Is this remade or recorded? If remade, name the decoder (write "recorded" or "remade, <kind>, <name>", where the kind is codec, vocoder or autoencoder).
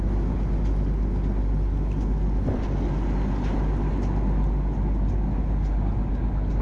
recorded